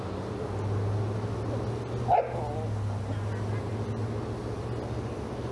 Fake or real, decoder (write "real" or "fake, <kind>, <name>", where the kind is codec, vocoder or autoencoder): real